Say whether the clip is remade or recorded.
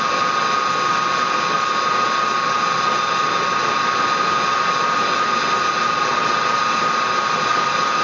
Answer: recorded